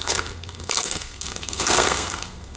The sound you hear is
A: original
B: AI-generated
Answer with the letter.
B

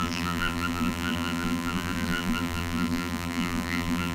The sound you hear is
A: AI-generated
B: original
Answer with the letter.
A